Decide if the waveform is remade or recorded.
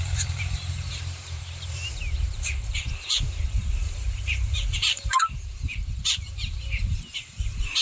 remade